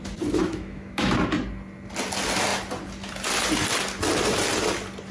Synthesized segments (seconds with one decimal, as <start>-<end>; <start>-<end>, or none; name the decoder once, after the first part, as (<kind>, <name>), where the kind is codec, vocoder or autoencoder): 0.4-1.1 (autoencoder, DAC-VAE)